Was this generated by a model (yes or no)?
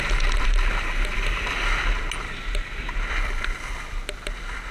no